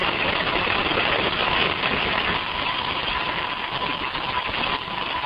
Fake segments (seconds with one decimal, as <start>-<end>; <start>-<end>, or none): none